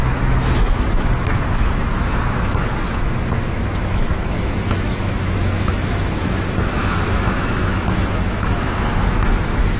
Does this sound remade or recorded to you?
remade